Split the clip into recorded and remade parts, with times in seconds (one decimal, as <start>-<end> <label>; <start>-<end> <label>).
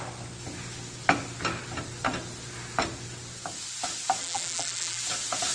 0.0-4.2 recorded; 4.2-5.0 remade; 5.0-5.5 recorded